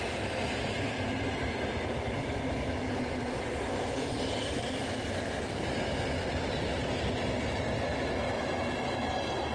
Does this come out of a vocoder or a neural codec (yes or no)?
no